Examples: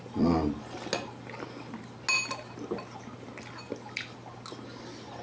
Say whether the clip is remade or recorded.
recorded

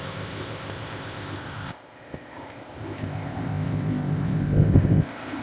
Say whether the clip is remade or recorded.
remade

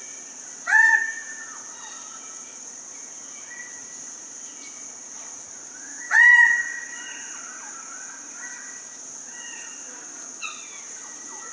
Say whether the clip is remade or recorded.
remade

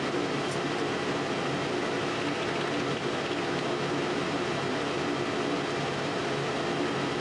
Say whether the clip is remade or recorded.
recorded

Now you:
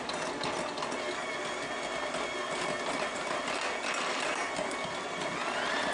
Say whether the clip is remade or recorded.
recorded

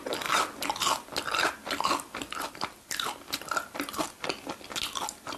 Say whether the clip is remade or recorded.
recorded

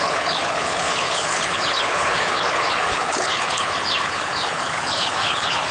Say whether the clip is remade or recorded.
remade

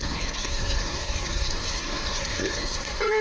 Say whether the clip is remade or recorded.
remade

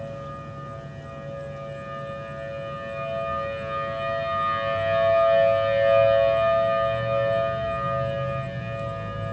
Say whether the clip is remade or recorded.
recorded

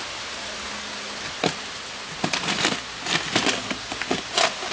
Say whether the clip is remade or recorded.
recorded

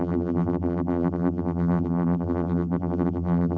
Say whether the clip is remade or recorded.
remade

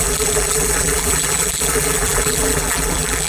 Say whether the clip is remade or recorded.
remade